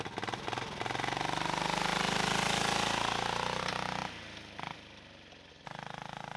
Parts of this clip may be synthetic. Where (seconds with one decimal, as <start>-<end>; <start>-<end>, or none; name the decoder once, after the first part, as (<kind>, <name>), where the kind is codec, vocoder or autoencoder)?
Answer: none